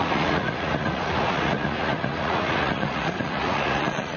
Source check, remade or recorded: remade